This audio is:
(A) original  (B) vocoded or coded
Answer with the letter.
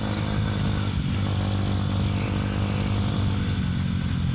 A